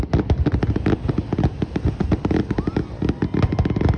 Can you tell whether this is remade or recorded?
recorded